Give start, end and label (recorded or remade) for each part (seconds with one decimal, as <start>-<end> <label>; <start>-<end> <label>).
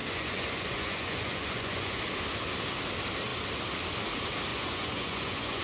0.0-2.0 remade; 2.0-4.5 recorded; 4.5-5.6 remade